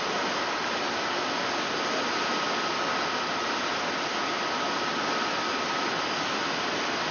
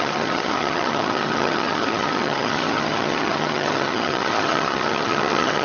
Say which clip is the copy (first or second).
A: second